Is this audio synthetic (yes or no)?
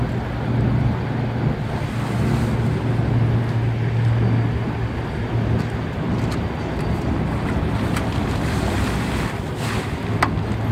no